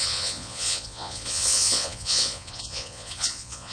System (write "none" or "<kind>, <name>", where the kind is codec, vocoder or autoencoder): vocoder, Vocos